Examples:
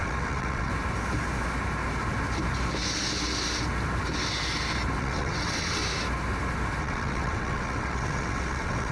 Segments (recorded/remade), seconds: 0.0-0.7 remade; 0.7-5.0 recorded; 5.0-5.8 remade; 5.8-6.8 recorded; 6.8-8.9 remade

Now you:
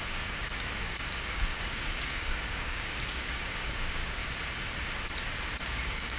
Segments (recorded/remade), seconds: 0.0-4.2 remade; 4.2-5.6 recorded; 5.6-6.2 remade

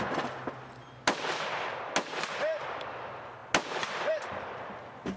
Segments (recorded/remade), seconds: 0.0-5.2 recorded

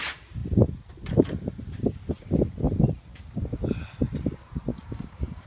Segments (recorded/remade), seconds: 0.0-4.7 recorded; 4.7-5.5 remade